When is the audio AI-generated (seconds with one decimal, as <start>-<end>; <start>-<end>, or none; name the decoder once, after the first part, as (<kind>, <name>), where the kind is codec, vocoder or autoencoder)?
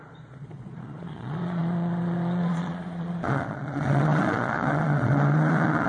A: 0.0-5.9 (vocoder, Vocos)